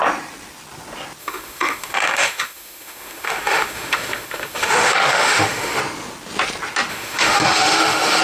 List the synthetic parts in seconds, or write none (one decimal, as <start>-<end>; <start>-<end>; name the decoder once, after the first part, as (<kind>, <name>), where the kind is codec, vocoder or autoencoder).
1.2-5.8 (autoencoder, DAC-VAE); 6.9-8.2